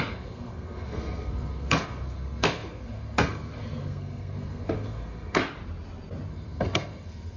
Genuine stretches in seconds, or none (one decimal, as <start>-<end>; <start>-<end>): 5.4-6.3